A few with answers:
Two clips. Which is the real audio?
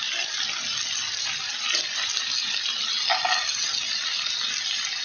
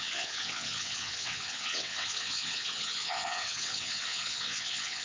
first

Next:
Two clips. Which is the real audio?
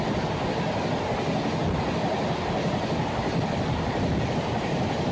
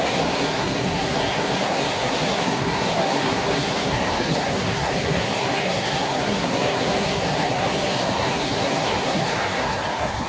first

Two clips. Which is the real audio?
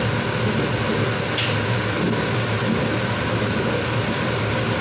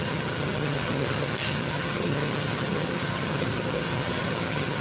first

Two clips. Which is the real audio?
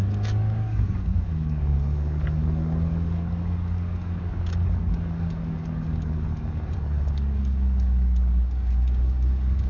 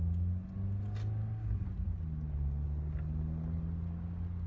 second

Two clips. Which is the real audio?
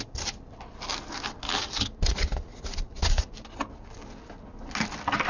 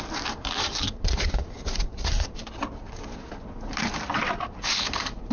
first